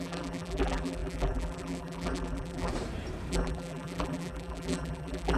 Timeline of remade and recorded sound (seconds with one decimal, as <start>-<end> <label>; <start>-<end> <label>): 0.0-2.7 remade; 2.7-3.3 recorded; 3.3-5.4 remade